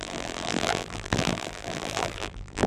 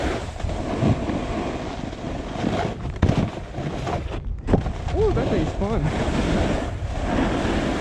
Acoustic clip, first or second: second